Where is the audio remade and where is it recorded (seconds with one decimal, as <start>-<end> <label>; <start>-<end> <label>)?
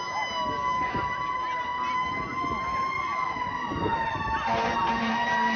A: 0.0-5.6 recorded